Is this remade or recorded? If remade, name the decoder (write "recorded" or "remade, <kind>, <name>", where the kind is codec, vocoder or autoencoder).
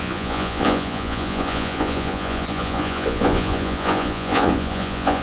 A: remade, vocoder, Vocos